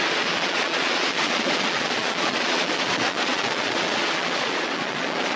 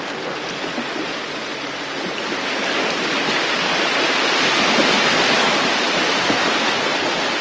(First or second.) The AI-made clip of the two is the first